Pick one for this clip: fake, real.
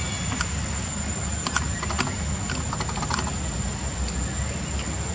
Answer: real